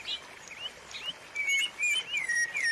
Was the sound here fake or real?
real